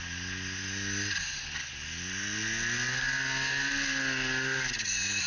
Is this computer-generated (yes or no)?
no